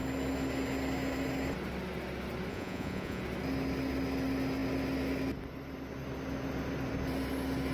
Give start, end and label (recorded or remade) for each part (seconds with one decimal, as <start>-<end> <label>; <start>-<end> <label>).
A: 0.0-2.5 recorded; 2.5-3.2 remade; 3.2-7.7 recorded